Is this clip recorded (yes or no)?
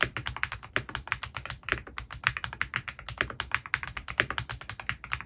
yes